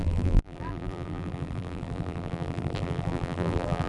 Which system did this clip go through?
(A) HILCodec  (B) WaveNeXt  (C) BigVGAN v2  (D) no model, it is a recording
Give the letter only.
C